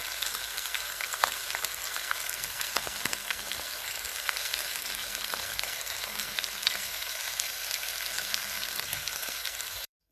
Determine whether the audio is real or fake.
fake